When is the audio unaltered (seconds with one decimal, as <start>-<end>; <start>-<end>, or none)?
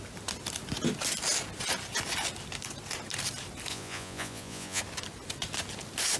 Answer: 0.0-3.7; 4.8-6.2